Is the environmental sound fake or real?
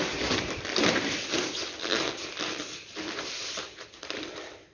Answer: real